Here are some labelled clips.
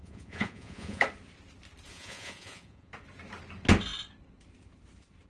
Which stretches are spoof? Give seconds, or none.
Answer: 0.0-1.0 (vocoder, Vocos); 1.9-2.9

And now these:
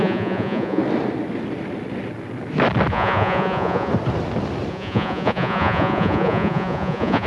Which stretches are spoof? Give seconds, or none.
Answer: 0.0-0.8 (vocoder, Vocos); 2.9-3.9; 4.7-7.3

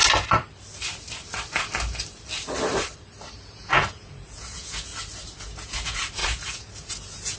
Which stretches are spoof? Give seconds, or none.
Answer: 3.5-4.9 (vocoder, Vocos); 5.4-7.4

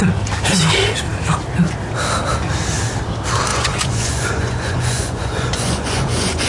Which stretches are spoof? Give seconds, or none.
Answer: 3.5-6.5 (vocoder, Vocos)

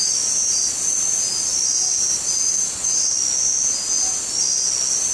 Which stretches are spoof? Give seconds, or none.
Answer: none

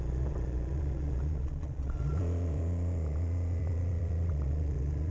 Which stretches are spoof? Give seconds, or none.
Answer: 0.0-5.1 (vocoder, Vocos)

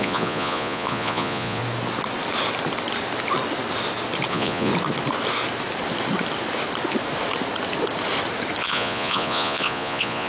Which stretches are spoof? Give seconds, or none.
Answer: 0.0-1.6 (vocoder, Vocos); 4.3-4.7; 8.6-10.3